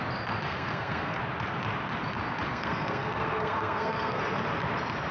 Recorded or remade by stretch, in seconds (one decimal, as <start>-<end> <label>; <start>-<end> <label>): 0.0-0.5 recorded; 0.5-1.2 remade; 1.2-2.5 recorded; 2.5-4.2 remade; 4.2-5.1 recorded